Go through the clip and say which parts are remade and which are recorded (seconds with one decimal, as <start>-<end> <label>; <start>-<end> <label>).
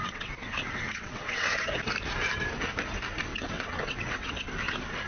0.0-1.6 remade; 1.6-3.3 recorded; 3.3-4.5 remade; 4.5-5.1 recorded